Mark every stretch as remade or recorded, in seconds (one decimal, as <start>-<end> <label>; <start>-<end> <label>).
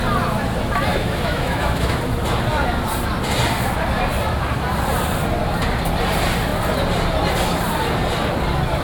0.0-0.9 recorded; 0.9-2.0 remade; 2.0-8.8 recorded